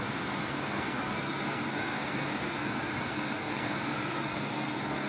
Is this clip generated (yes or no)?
yes